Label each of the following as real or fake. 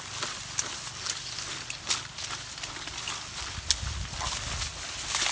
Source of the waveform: real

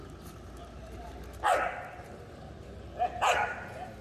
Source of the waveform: real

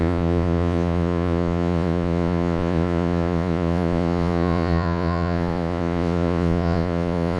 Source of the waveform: fake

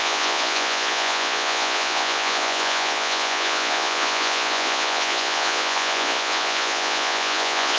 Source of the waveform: fake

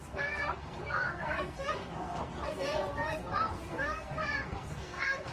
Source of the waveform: fake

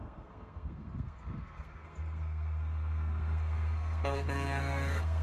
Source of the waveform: fake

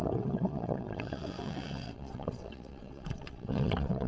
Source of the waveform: fake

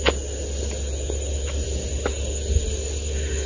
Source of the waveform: real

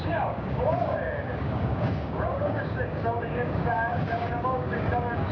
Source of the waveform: fake